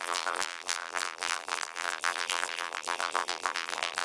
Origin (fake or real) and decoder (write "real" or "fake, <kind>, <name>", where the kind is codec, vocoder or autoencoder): fake, vocoder, BigVGAN v2